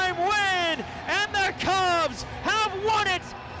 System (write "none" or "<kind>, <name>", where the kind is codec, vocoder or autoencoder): none